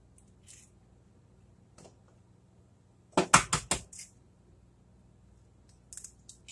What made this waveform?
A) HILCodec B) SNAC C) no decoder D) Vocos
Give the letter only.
C